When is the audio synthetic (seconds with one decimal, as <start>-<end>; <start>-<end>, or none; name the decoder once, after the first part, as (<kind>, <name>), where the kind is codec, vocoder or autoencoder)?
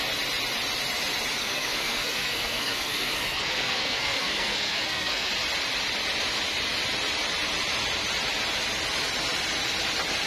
1.4-5.3 (codec, SNAC)